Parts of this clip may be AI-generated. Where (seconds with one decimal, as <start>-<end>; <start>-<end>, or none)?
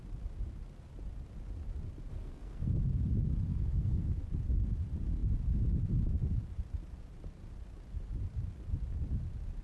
2.1-2.7; 3.5-4.1